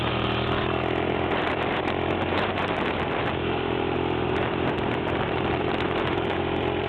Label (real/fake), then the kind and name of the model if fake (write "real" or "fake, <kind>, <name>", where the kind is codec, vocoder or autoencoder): fake, vocoder, BigVGAN v2